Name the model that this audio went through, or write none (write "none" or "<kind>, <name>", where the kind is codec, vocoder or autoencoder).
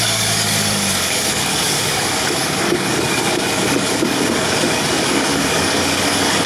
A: codec, DAC